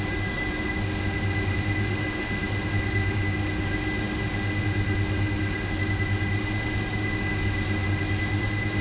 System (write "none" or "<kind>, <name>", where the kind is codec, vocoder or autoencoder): autoencoder, DAC-VAE